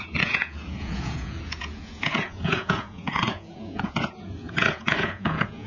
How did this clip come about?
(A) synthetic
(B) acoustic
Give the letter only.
A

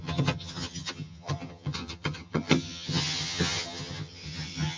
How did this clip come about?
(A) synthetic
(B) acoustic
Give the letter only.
A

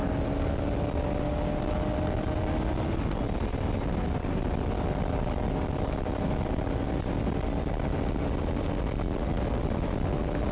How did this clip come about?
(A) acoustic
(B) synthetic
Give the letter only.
A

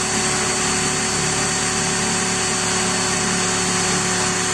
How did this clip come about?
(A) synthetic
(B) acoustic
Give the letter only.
B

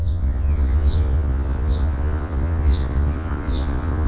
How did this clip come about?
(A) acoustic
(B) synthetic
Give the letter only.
B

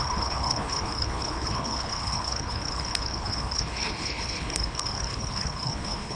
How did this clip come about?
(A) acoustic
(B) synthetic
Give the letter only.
B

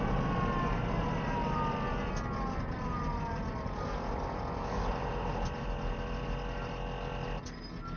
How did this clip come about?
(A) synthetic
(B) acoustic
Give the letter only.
B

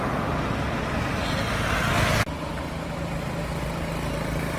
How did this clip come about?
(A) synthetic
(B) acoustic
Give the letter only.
B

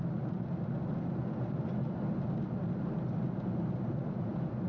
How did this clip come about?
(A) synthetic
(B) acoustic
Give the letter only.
B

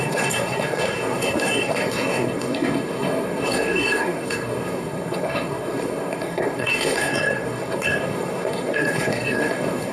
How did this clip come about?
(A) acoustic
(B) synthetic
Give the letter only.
B